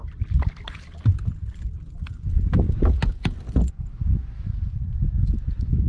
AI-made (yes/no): no